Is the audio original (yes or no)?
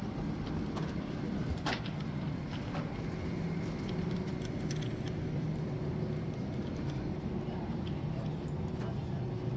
yes